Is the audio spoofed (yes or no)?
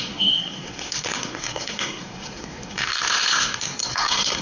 yes